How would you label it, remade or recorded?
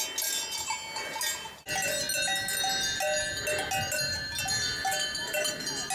recorded